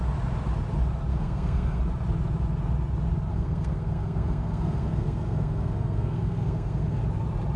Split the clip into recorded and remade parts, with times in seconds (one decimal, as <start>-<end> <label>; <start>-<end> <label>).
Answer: 0.0-1.1 recorded; 1.1-1.8 remade; 1.8-3.3 recorded; 3.3-7.0 remade; 7.0-7.6 recorded